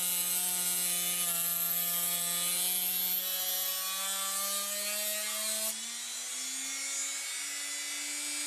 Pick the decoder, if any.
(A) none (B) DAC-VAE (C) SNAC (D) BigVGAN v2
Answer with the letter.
A